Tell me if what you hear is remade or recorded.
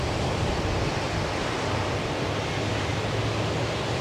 recorded